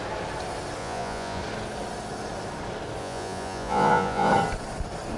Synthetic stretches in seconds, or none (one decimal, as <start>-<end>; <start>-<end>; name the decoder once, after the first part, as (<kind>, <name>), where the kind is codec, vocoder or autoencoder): 0.8-1.4 (vocoder, Vocos); 3.0-4.3